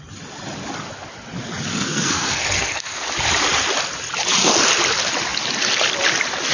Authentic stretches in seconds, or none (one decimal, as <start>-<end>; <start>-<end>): 0.0-1.7; 3.1-6.5